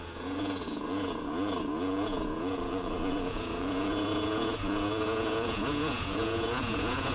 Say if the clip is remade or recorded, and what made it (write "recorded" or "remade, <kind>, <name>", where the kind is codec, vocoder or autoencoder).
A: remade, vocoder, Vocos